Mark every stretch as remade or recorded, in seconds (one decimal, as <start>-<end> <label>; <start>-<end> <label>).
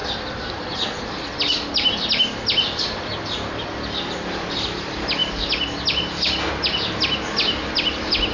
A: 0.0-8.3 recorded